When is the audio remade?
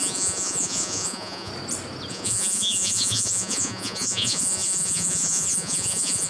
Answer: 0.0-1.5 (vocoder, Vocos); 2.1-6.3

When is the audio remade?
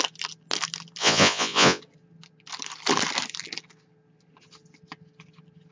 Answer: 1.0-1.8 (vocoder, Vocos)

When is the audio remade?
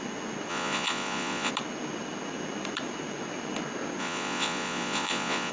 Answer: 0.5-1.5 (vocoder, Vocos); 4.0-5.5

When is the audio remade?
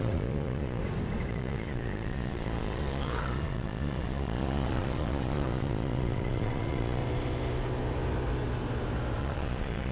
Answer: 0.0-0.8 (vocoder, Vocos); 1.3-7.0; 9.2-9.9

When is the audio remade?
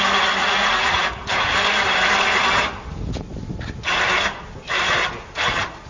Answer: 0.4-1.0 (vocoder, Vocos)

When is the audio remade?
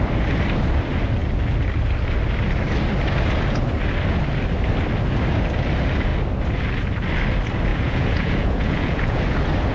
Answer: 7.7-9.2 (vocoder, Vocos)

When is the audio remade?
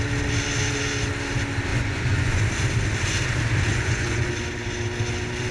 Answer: 1.7-2.4 (vocoder, Vocos); 3.7-4.3